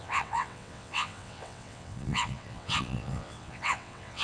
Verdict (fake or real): fake